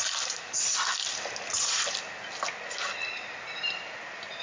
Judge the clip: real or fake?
real